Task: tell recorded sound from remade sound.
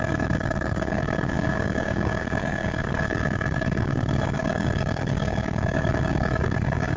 remade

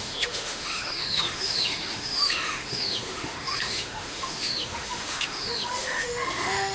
remade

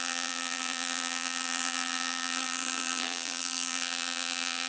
remade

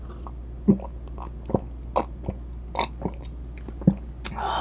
recorded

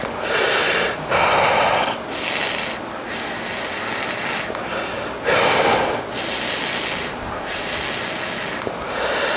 recorded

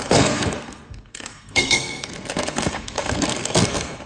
remade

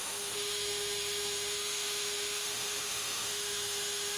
remade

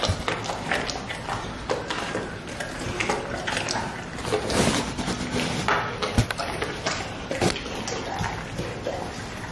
recorded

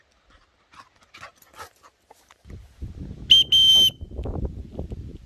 recorded